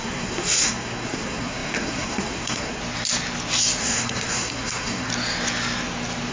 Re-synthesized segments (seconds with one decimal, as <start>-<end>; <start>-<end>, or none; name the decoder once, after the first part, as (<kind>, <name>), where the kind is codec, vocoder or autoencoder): 0.0-2.8 (codec, SNAC); 3.8-5.1